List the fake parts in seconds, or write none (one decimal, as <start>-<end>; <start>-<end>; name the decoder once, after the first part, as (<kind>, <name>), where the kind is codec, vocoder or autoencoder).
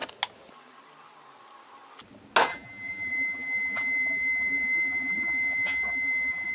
2.5-6.5 (vocoder, BigVGAN v2)